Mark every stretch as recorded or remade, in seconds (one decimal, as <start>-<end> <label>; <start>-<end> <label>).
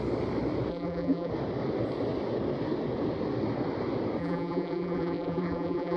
0.0-0.7 recorded; 0.7-1.3 remade; 1.3-4.2 recorded; 4.2-6.0 remade